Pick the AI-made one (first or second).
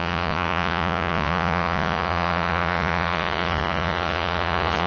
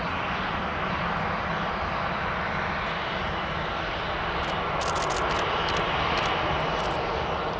first